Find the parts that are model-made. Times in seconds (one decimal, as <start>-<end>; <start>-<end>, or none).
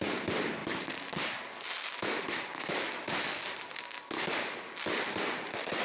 none